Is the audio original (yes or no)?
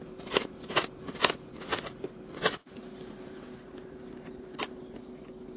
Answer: yes